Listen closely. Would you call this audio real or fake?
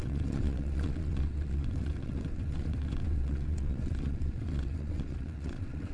fake